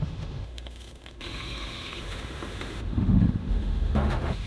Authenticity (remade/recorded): remade